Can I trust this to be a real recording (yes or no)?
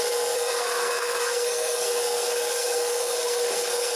no